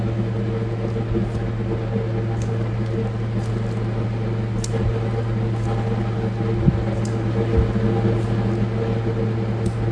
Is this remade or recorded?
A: recorded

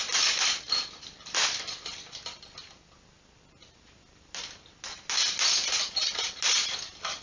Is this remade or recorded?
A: recorded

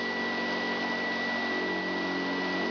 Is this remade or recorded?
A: recorded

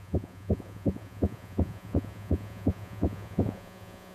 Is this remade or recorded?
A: remade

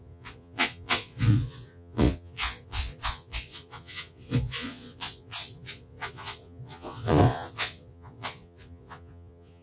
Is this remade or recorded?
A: remade